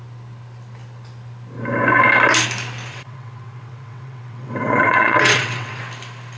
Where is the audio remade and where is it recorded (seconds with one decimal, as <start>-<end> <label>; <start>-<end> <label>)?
0.0-2.9 recorded; 2.9-5.8 remade; 5.8-6.4 recorded